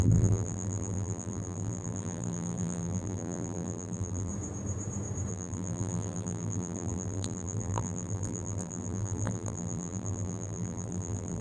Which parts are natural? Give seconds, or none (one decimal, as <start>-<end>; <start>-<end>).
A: 4.3-5.3